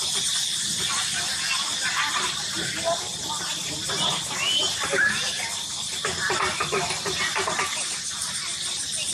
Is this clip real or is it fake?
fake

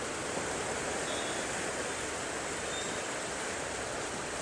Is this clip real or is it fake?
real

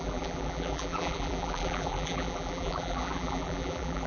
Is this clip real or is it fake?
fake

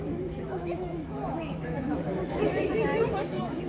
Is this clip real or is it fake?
fake